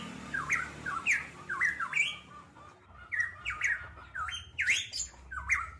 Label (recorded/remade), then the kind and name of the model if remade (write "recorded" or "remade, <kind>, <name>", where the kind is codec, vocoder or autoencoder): recorded